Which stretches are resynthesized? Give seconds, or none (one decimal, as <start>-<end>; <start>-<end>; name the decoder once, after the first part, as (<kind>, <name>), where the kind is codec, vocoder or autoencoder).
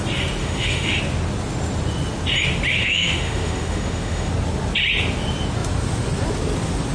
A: 0.4-1.0 (autoencoder, DAC-VAE); 2.7-4.3